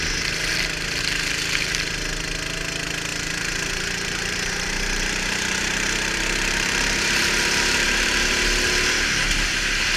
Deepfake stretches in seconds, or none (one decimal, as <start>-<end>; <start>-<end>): 3.1-8.4